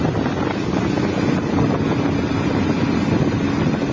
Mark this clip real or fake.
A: real